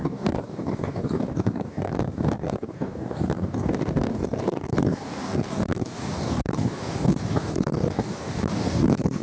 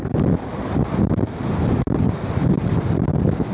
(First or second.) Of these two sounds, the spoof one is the first